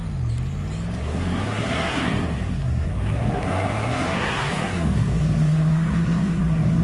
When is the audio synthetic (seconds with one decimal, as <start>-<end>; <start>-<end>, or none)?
1.0-6.8